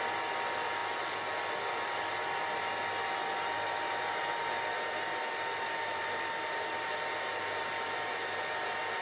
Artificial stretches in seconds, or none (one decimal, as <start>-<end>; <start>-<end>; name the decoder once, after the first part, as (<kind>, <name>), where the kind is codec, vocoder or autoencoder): none